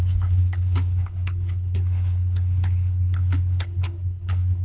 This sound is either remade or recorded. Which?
remade